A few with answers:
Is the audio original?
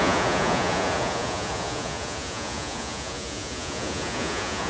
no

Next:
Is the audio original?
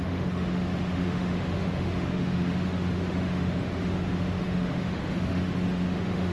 no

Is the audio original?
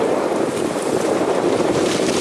no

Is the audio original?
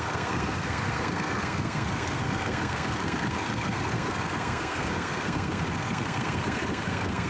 no